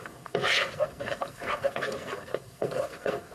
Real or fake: fake